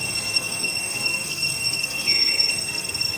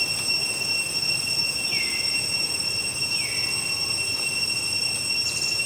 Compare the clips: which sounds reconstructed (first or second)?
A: first